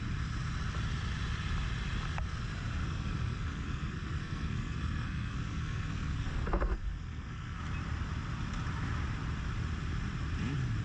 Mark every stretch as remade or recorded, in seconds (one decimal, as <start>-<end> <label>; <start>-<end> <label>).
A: 0.0-2.8 recorded; 2.8-7.6 remade; 7.6-10.8 recorded